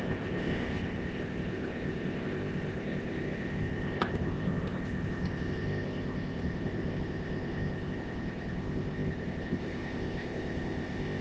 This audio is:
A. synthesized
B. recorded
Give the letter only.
A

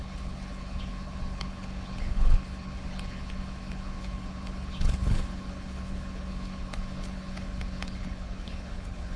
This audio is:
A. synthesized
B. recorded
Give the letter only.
A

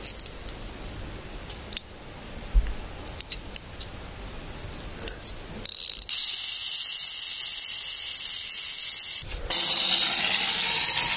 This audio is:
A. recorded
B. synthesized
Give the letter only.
A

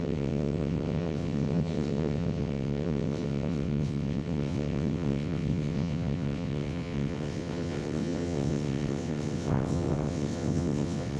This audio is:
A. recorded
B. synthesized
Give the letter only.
B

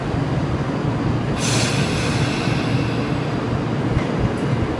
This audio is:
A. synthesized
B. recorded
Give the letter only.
B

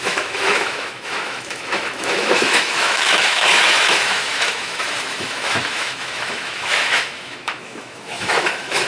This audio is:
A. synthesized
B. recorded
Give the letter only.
A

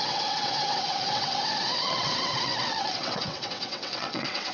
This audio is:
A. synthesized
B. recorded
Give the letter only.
A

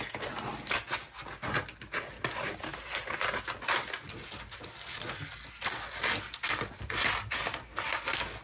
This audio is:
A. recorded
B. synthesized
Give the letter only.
A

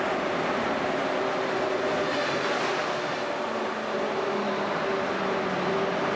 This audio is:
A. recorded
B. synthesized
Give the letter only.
A